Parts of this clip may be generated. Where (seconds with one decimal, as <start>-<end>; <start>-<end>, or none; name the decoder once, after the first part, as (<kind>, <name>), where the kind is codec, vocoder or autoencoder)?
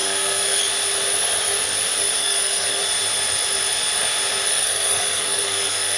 0.0-0.6 (codec, SNAC); 2.2-2.8; 4.5-6.0